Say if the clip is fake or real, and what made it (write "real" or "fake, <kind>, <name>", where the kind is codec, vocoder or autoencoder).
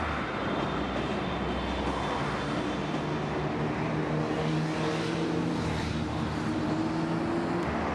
real